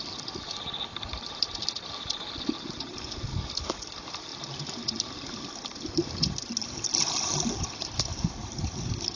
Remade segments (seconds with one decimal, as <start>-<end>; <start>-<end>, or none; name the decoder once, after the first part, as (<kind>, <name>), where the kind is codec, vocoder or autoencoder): 3.3-3.9 (codec, DAC)